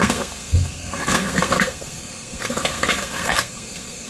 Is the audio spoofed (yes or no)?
yes